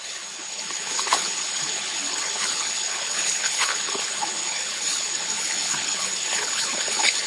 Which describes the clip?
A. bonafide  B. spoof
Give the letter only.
B